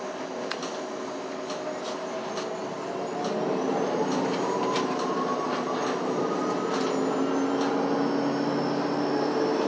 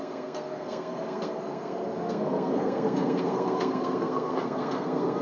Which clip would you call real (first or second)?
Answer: first